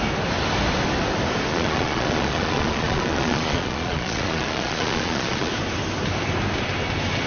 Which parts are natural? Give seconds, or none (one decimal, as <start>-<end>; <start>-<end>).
0.0-1.5; 5.5-7.3